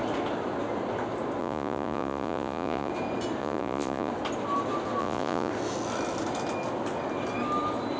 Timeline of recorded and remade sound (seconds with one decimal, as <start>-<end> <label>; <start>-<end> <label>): 0.0-1.4 recorded; 1.4-2.9 remade; 2.9-3.4 recorded; 3.4-4.1 remade; 4.1-5.0 recorded; 5.0-5.5 remade; 5.5-8.0 recorded